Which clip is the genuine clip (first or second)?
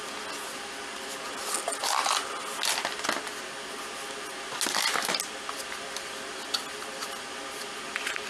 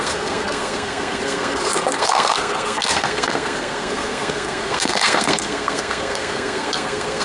first